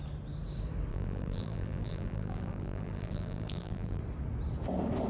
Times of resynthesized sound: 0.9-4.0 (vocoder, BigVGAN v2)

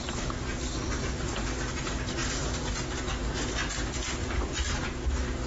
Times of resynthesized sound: 2.2-2.8 (vocoder, BigVGAN v2); 4.2-4.8

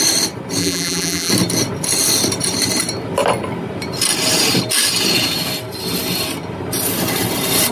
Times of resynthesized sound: 0.6-1.3 (vocoder, BigVGAN v2)

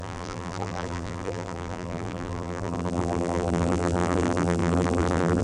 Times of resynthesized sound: 0.0-5.4 (vocoder, BigVGAN v2)

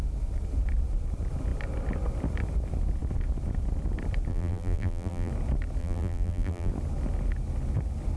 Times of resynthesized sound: 4.3-5.3 (vocoder, BigVGAN v2); 5.8-6.7

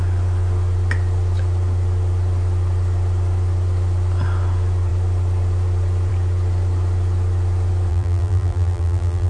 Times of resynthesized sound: 7.9-9.3 (vocoder, BigVGAN v2)

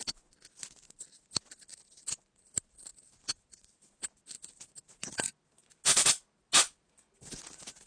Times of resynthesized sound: 1.7-2.2 (vocoder, BigVGAN v2); 2.9-3.9